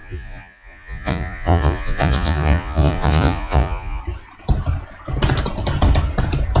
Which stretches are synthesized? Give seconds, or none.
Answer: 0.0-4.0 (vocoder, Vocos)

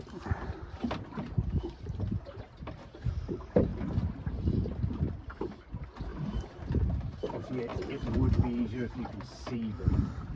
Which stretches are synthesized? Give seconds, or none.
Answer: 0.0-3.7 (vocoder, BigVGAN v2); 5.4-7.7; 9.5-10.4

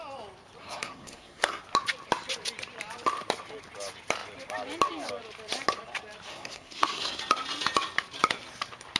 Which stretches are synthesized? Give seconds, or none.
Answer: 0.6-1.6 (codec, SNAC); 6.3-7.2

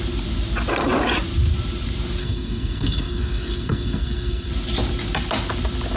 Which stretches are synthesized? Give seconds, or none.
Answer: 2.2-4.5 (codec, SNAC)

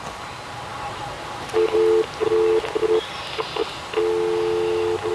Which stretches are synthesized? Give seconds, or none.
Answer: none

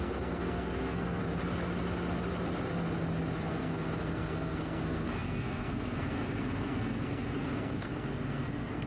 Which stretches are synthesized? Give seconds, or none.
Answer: 0.0-1.2 (codec, SNAC); 3.5-8.9

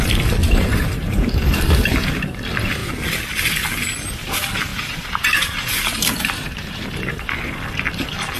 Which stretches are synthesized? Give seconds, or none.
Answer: 0.4-2.2 (vocoder, BigVGAN v2); 4.7-7.5